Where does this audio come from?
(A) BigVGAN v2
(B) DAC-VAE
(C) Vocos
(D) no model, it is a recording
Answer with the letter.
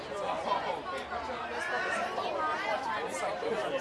D